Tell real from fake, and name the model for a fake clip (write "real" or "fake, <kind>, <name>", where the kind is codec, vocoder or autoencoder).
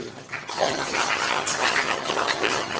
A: fake, vocoder, HiFi-GAN